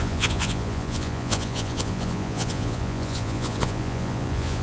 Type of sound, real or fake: fake